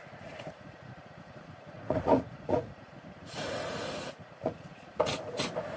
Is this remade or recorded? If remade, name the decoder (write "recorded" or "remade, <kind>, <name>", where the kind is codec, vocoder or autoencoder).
remade, vocoder, Vocos